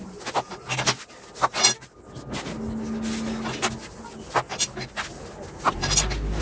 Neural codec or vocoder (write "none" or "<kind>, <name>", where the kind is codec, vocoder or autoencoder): none